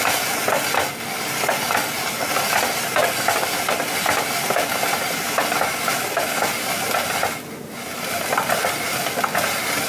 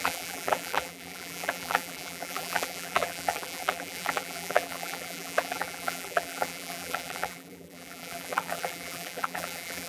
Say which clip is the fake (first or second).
second